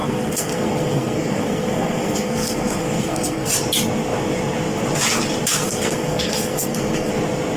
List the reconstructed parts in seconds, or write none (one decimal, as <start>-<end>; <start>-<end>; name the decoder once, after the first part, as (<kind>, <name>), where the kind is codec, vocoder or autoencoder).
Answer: 0.0-3.5 (codec, SNAC); 5.5-7.1